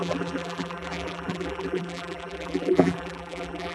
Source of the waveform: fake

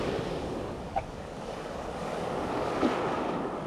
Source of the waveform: fake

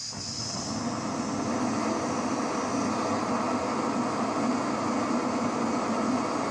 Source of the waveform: real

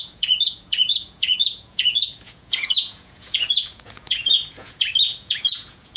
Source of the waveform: fake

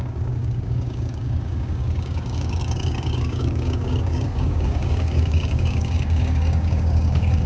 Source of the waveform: fake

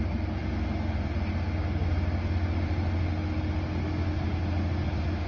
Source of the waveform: real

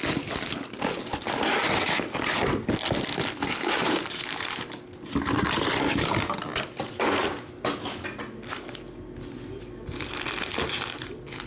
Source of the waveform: real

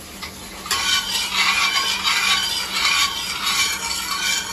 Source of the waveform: real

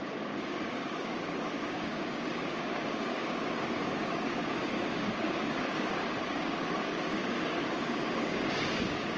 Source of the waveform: fake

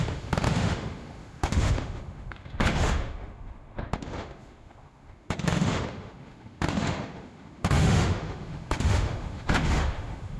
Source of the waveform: fake